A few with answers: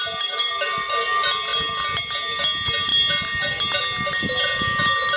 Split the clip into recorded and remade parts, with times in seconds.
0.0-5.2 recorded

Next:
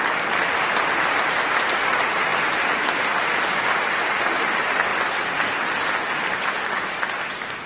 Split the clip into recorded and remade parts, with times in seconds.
0.0-2.3 remade; 2.3-4.4 recorded; 4.4-4.9 remade; 4.9-7.3 recorded; 7.3-7.7 remade

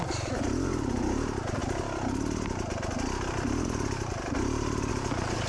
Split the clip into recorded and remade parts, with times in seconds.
0.0-5.5 recorded

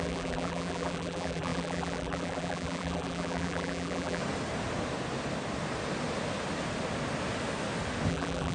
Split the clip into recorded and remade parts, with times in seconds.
0.0-4.2 remade; 4.2-8.1 recorded; 8.1-8.5 remade

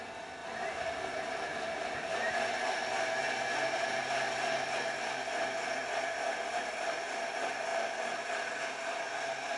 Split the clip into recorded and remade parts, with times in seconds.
0.0-0.4 recorded; 0.4-2.3 remade; 2.3-6.5 recorded; 6.5-7.2 remade; 7.2-9.6 recorded

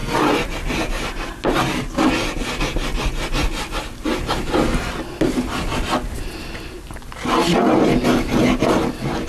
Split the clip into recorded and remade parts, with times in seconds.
0.0-9.3 recorded